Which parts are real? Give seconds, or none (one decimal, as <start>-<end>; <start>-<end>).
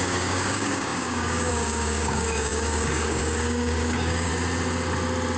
4.3-5.4